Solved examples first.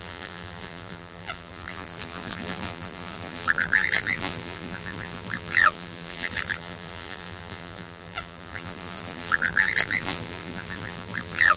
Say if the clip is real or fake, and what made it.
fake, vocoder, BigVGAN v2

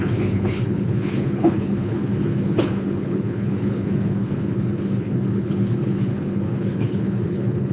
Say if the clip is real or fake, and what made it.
fake, codec, HILCodec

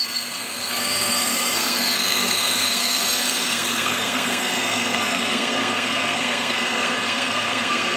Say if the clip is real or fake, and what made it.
fake, codec, SNAC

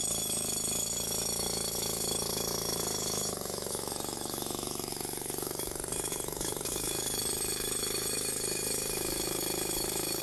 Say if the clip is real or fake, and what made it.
fake, autoencoder, DAC-VAE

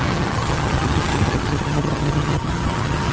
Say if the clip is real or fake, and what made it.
fake, vocoder, HiFi-GAN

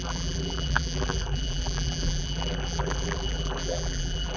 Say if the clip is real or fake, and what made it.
fake, vocoder, BigVGAN v2